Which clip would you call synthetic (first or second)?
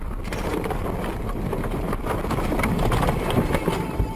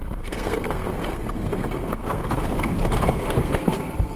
second